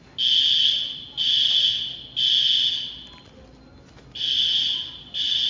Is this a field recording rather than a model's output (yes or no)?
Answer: yes